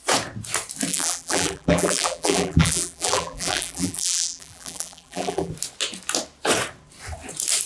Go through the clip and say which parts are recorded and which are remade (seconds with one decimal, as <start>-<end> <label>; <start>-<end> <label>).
0.0-0.9 recorded; 0.9-5.5 remade; 5.5-7.7 recorded